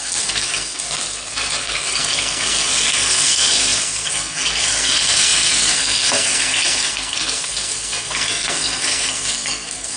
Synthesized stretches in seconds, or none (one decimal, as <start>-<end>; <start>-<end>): 0.0-10.0